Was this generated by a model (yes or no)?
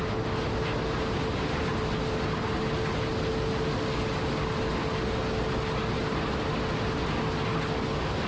no